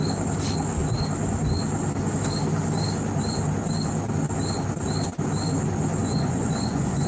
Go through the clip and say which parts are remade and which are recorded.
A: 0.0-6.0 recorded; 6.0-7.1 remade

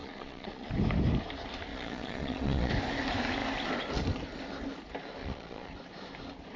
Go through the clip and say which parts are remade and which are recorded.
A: 0.0-0.7 remade; 0.7-1.7 recorded; 1.7-2.7 remade; 2.7-5.2 recorded; 5.2-5.7 remade; 5.7-6.6 recorded